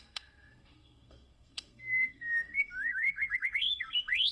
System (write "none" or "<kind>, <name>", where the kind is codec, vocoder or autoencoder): codec, SNAC